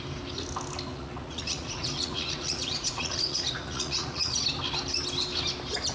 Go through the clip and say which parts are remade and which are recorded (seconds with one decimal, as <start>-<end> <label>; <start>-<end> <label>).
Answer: 0.0-0.9 recorded; 0.9-4.4 remade; 4.4-5.9 recorded